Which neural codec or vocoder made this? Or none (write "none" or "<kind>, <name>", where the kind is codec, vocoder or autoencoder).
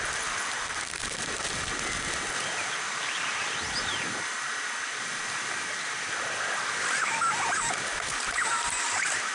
none